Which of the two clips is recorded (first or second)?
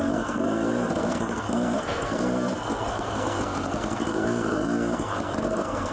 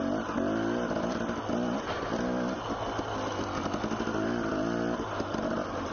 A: second